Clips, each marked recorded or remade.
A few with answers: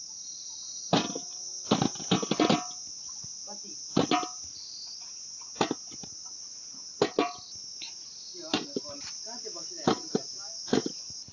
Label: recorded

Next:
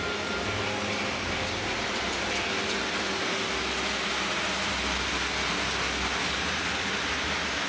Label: recorded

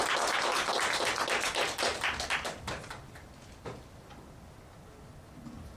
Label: recorded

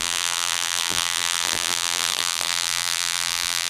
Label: remade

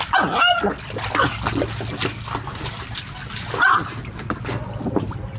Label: recorded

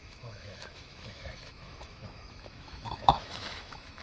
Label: remade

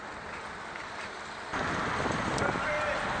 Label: recorded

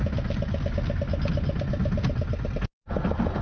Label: recorded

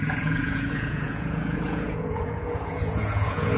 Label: remade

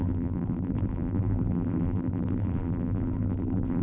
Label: remade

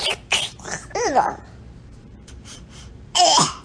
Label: remade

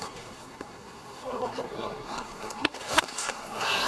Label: remade